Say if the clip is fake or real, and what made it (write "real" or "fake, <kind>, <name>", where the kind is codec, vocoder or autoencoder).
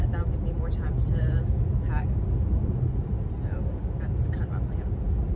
real